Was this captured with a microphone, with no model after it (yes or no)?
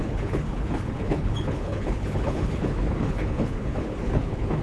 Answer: no